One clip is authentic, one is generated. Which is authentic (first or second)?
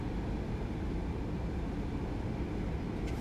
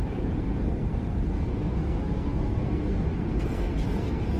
first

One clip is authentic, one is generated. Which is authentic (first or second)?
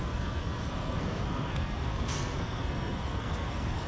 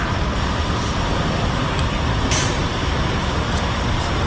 second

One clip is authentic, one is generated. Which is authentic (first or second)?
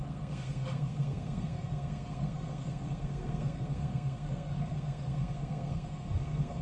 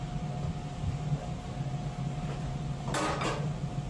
second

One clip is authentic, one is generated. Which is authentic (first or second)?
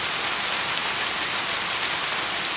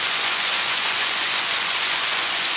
first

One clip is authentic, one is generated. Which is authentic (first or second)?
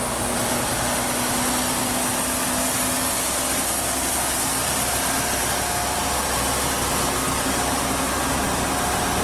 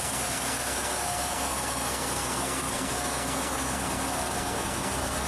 first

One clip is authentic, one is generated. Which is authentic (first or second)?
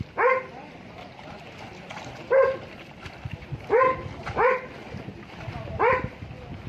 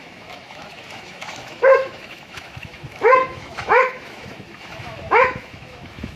first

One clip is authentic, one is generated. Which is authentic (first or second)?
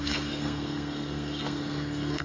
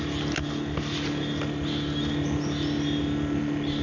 second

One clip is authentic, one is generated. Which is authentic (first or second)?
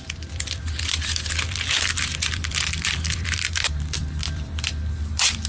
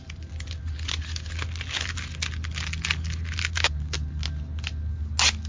second